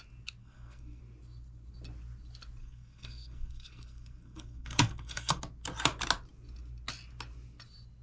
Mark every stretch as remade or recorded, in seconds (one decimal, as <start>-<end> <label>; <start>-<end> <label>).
0.0-0.4 recorded; 0.4-1.0 remade; 1.0-2.6 recorded; 2.6-5.4 remade; 5.4-8.0 recorded